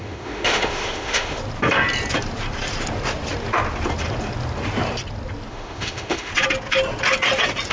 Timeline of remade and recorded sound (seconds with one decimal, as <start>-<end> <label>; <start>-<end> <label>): 0.0-1.4 remade; 1.4-5.5 recorded; 5.5-6.3 remade; 6.3-7.7 recorded